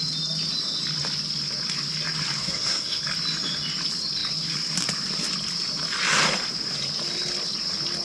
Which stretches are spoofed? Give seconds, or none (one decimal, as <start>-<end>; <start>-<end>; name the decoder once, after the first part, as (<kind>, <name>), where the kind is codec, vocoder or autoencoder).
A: 2.4-3.0 (codec, SNAC)